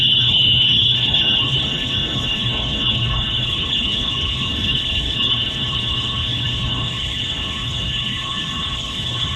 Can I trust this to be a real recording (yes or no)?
no